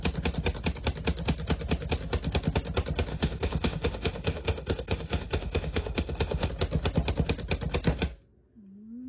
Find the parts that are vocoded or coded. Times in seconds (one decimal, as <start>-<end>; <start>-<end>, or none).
3.1-6.5